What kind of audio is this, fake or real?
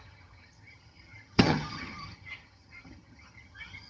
fake